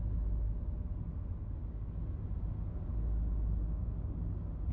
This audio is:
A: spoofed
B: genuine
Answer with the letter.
B